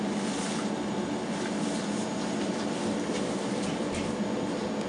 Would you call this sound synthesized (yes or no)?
no